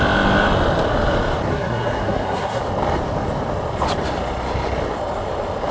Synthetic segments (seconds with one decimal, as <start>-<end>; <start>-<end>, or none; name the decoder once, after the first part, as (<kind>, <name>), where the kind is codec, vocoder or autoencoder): 1.5-2.6 (codec, SNAC)